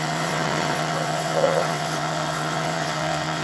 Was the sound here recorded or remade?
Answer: remade